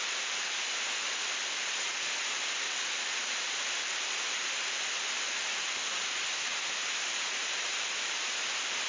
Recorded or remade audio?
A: recorded